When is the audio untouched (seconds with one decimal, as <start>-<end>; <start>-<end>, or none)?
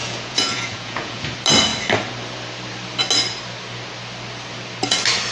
1.2-5.3